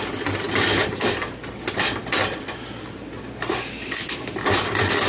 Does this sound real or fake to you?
real